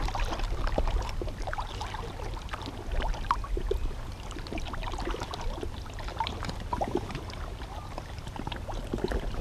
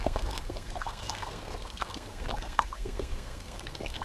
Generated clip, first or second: second